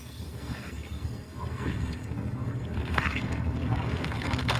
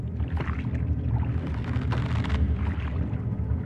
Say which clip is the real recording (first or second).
second